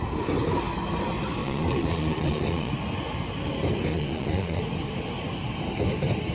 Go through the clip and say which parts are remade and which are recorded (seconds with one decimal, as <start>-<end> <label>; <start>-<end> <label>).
0.0-1.4 recorded; 1.4-2.7 remade; 2.7-3.9 recorded; 3.9-4.6 remade; 4.6-6.3 recorded